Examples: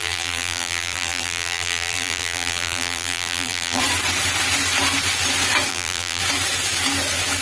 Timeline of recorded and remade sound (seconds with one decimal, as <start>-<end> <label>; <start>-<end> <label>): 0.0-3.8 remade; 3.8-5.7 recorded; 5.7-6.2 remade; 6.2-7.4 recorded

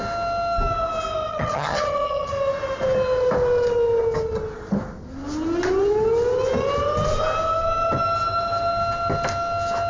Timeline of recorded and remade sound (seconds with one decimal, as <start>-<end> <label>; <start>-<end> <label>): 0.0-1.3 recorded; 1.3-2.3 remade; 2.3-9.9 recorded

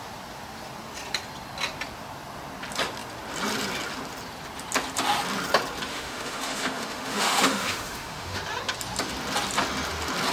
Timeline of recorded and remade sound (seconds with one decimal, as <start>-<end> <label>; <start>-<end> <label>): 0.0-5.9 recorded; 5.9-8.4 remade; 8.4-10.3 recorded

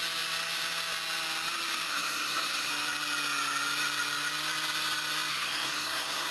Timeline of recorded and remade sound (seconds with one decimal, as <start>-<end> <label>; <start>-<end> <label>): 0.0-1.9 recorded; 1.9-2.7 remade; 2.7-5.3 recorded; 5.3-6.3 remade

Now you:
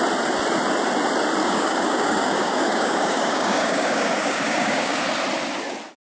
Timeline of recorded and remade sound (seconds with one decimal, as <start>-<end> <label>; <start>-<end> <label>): 0.0-1.4 recorded; 1.4-5.0 remade; 5.0-6.0 recorded